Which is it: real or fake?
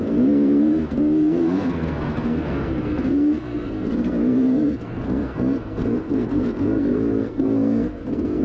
fake